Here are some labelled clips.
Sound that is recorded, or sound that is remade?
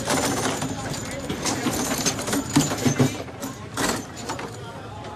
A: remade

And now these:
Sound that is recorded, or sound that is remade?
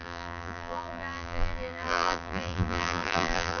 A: remade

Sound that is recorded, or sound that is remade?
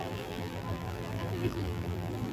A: remade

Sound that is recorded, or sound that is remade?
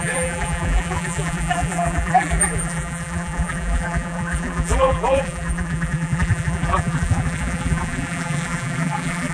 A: remade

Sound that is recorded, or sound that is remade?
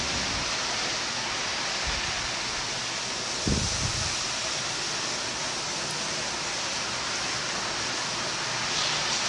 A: recorded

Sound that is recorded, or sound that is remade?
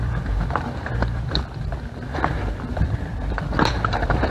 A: remade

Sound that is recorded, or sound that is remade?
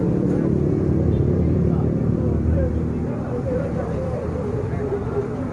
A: remade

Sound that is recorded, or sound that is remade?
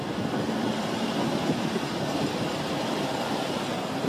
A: remade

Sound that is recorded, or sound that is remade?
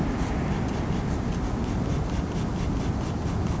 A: recorded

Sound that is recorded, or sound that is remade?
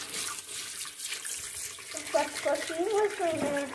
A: recorded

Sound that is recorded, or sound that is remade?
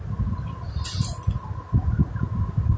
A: recorded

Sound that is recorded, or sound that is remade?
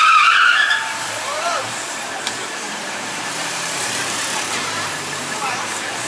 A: remade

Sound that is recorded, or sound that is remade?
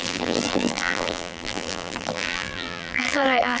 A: remade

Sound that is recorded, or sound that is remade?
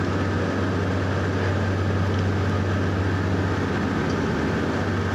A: recorded